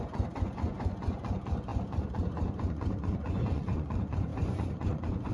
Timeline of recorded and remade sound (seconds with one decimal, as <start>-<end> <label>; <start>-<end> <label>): 0.0-5.3 remade